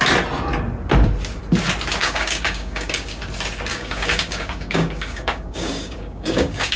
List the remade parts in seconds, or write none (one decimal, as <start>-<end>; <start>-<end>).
2.0-3.2; 3.7-6.8